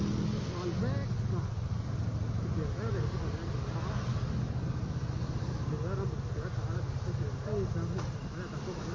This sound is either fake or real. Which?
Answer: real